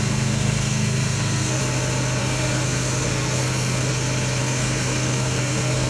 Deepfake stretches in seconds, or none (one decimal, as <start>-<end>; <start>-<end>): 0.0-1.6; 2.2-3.9; 4.4-5.9